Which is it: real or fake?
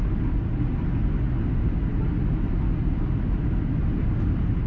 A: real